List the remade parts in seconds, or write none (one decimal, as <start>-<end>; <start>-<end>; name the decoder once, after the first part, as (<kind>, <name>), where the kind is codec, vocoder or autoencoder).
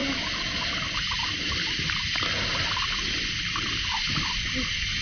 none